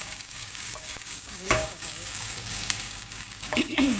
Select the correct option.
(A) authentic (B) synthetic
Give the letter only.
B